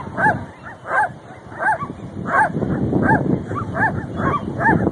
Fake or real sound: real